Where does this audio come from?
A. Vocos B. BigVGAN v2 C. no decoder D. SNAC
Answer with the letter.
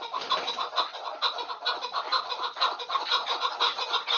C